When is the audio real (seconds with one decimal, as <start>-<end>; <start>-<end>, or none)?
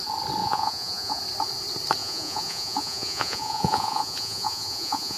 0.0-0.4; 1.2-2.0